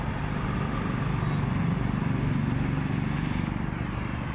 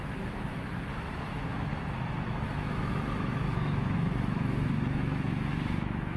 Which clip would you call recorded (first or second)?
first